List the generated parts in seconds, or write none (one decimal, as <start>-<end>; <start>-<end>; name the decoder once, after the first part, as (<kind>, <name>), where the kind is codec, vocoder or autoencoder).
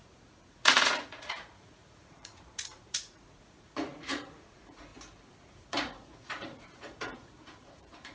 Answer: 0.0-4.9 (vocoder, Vocos); 5.4-8.1